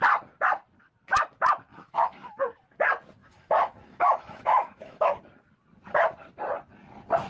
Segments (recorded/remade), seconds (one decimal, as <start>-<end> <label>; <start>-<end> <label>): 0.0-1.7 recorded; 1.7-2.4 remade; 2.4-3.2 recorded; 3.2-5.1 remade; 5.1-7.3 recorded